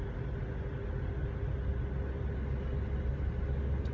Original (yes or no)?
yes